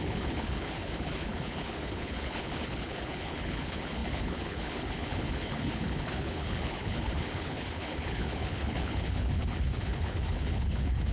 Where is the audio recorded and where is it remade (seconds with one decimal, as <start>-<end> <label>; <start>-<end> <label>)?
0.0-11.1 remade